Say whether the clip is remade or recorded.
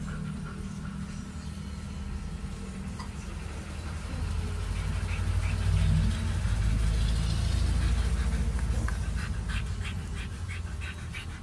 recorded